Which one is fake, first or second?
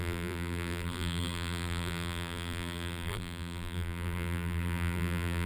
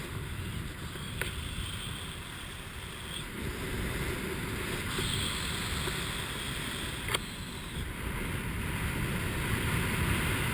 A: first